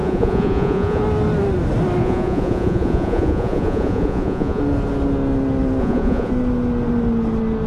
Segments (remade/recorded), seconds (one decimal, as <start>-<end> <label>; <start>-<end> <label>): 0.0-1.0 remade; 1.0-2.0 recorded; 2.0-4.6 remade; 4.6-5.8 recorded; 5.8-6.3 remade; 6.3-7.7 recorded